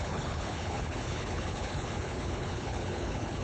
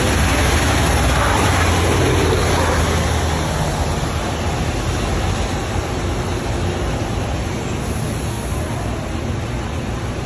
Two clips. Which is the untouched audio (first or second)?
second